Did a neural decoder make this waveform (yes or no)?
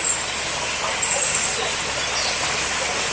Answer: no